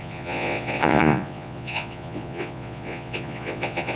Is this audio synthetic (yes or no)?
yes